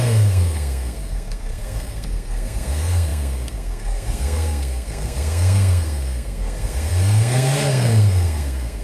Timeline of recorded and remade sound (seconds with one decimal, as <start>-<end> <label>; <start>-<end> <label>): 0.0-8.8 remade